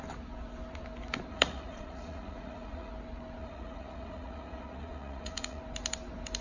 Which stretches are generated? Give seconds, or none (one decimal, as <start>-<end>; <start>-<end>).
1.3-2.9; 3.4-5.6

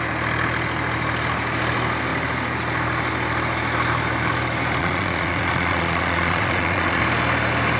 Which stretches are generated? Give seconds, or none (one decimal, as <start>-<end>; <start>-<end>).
4.8-7.0

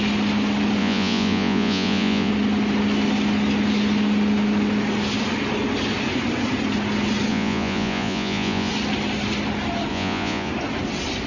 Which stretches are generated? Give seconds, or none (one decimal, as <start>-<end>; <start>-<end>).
0.8-2.3; 7.3-8.7; 9.9-10.5

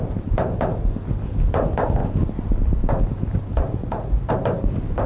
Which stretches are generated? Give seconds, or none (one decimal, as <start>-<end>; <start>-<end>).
3.5-4.3

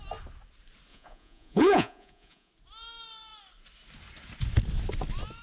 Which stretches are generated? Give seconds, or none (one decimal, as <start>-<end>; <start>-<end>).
0.9-2.5

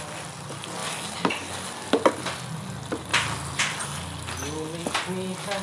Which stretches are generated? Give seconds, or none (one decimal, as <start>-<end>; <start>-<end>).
none

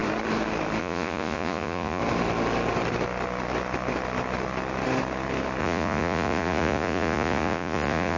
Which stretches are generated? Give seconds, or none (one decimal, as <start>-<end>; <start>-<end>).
0.8-2.0; 5.6-8.2